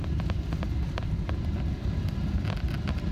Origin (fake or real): real